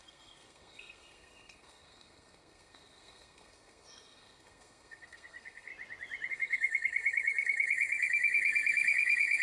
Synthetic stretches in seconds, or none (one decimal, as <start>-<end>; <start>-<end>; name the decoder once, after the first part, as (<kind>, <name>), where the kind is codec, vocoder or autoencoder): 0.0-5.7 (codec, SNAC); 6.3-9.4